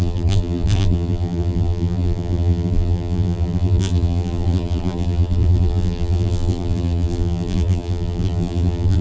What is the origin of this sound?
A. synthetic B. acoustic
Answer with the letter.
A